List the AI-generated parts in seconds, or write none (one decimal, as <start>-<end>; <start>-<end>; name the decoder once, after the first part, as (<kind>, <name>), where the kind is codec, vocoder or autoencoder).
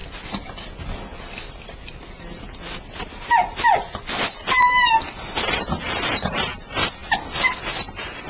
none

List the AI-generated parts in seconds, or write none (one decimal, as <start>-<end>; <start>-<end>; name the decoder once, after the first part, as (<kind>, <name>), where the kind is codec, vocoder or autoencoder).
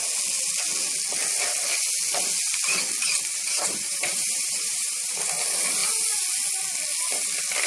3.3-5.2 (vocoder, BigVGAN v2)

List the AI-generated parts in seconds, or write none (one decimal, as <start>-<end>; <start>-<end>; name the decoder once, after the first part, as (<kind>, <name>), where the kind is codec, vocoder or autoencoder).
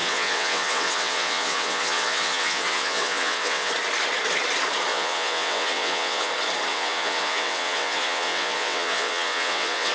0.0-3.7 (vocoder, WaveNeXt); 4.9-6.3; 6.7-9.9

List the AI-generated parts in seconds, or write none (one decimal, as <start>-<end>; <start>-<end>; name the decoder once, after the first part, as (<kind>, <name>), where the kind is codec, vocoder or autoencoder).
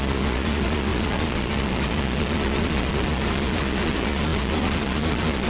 0.0-5.5 (vocoder, Vocos)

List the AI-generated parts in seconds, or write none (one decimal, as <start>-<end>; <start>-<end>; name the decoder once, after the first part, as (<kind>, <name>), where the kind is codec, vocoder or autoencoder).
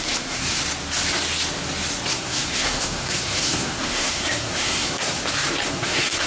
0.0-0.6 (codec, SNAC); 2.1-5.2; 5.7-6.3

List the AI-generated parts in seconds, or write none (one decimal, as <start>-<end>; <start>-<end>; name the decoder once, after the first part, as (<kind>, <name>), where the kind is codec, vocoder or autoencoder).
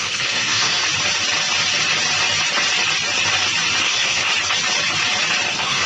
0.0-0.8 (codec, SNAC); 3.8-4.3; 5.5-5.9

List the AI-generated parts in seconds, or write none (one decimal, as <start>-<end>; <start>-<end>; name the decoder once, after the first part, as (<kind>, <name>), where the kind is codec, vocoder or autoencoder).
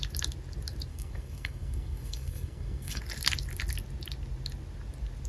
0.9-3.0 (codec, SNAC)